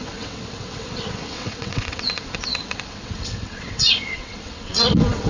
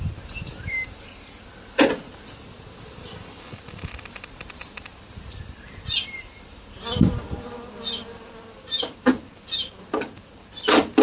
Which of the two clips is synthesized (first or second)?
first